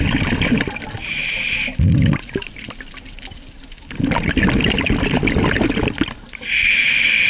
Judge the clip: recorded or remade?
recorded